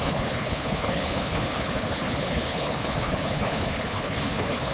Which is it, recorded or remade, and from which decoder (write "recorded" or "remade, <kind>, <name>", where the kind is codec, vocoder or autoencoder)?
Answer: remade, codec, HILCodec